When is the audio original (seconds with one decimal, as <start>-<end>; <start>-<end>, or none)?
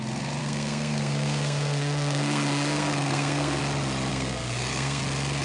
0.0-0.4; 3.6-4.1; 5.0-5.4